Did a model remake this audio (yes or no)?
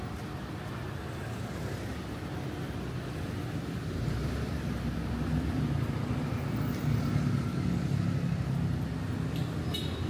no